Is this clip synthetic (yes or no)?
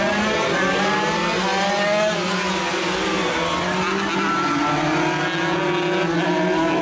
no